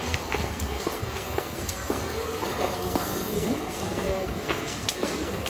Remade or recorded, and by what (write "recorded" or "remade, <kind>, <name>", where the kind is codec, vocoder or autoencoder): remade, codec, SNAC